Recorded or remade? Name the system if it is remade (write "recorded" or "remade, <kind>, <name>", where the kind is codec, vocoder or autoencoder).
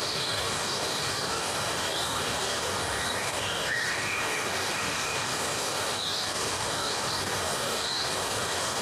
remade, codec, DAC